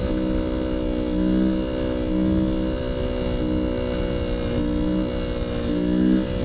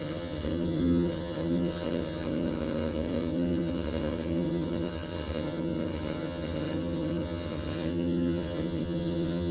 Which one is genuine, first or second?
first